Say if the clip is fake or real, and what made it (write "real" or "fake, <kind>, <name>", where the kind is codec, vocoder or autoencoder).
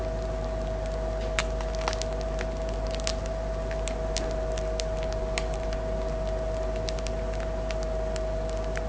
real